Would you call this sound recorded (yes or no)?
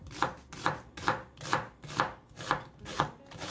yes